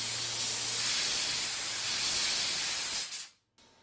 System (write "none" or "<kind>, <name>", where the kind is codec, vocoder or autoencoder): none